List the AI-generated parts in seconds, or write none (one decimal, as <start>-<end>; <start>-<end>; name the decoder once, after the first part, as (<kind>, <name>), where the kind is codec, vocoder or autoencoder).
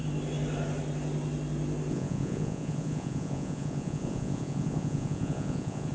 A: 1.9-5.9 (vocoder, Vocos)